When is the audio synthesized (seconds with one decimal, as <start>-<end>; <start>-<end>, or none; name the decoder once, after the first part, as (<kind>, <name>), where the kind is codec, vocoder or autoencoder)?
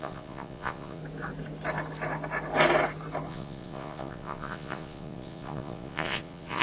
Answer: 0.0-1.0 (vocoder, Vocos); 3.3-6.6